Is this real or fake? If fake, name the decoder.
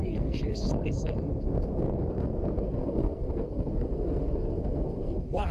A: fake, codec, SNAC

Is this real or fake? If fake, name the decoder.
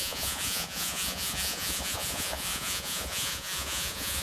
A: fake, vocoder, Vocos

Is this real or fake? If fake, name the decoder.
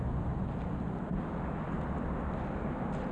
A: real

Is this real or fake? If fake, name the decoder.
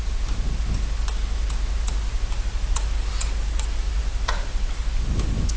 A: real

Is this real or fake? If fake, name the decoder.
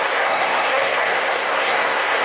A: fake, codec, SNAC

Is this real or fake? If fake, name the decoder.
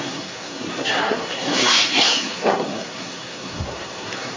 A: fake, codec, SNAC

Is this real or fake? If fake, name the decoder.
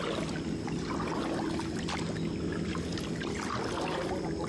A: real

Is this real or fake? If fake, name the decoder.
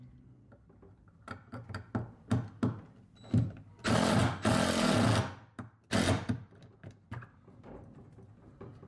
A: real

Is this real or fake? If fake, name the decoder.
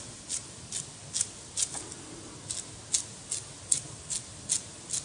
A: real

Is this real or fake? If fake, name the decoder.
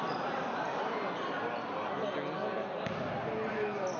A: real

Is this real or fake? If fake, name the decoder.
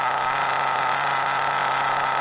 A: real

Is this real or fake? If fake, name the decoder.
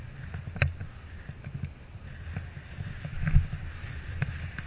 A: real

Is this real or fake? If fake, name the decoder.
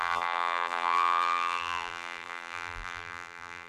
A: fake, vocoder, BigVGAN v2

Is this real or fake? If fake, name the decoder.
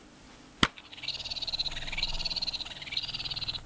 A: real